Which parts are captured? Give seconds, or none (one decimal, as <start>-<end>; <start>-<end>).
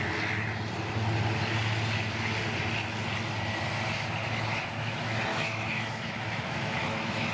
0.0-5.3